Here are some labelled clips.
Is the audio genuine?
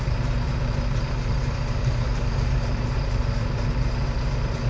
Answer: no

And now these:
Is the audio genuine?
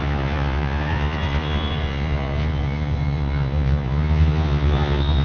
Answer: no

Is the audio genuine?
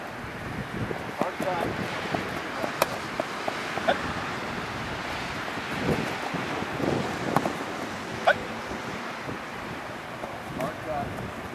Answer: yes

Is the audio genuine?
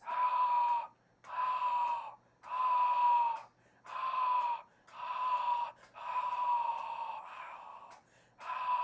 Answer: yes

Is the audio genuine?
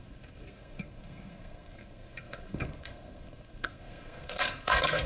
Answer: no